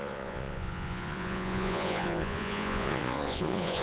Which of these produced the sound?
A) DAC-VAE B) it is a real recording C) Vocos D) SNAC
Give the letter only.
C